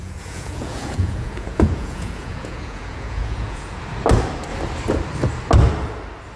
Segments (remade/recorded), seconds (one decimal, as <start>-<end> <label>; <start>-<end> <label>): 0.0-3.8 remade; 3.8-6.4 recorded